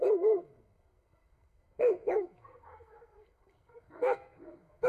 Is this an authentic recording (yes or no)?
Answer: no